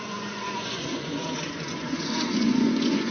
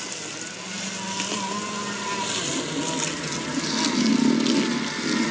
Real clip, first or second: second